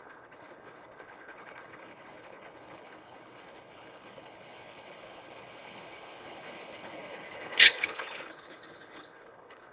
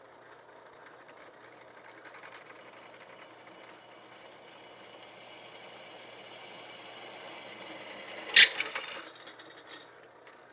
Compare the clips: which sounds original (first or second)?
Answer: second